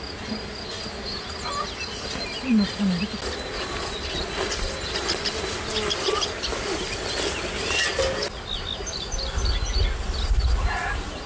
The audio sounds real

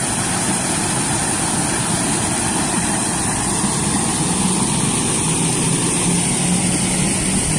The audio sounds real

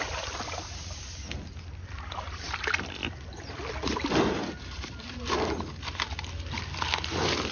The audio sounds real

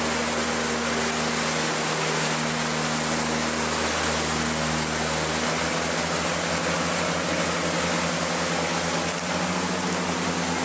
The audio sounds real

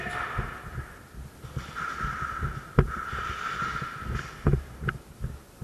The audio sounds real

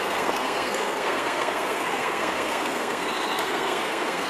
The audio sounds fake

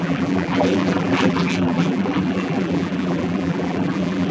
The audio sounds fake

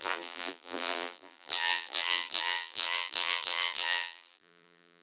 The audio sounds fake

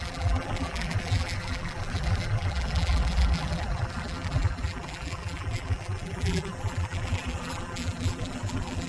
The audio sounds fake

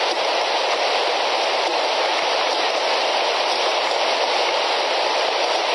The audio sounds real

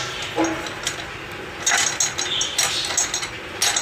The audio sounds real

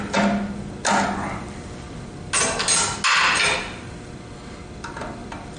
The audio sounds real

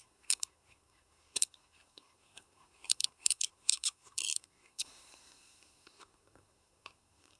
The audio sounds fake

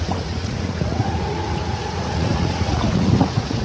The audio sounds fake